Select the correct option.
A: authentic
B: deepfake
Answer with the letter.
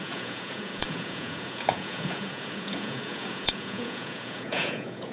B